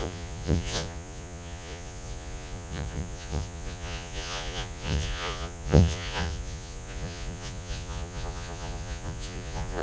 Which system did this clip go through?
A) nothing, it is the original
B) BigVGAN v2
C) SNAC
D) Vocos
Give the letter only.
D